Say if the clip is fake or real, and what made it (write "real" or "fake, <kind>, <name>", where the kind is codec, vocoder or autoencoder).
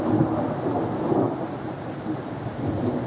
real